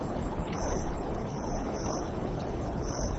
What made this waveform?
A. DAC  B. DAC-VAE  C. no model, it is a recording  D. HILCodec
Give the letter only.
D